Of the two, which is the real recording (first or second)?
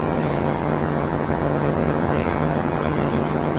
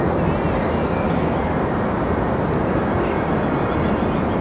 second